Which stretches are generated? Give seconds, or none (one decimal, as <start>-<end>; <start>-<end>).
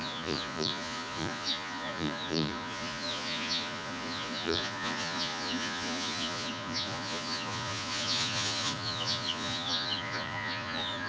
0.0-11.1